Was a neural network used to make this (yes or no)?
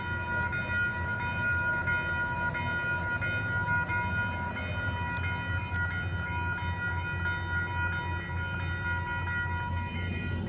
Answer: no